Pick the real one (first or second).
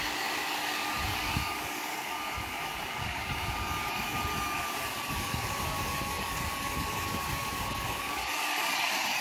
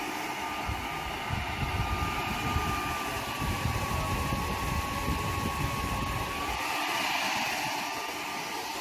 second